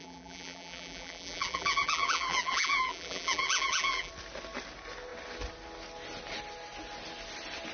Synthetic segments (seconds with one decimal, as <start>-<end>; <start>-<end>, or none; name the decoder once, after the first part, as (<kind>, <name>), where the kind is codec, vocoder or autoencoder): 0.0-4.1 (vocoder, BigVGAN v2)